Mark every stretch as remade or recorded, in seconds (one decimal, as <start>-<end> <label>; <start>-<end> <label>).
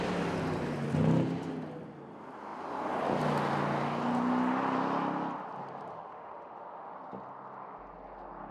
0.0-5.9 recorded; 5.9-6.9 remade; 6.9-8.5 recorded